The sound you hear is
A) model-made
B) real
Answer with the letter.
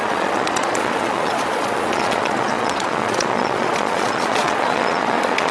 A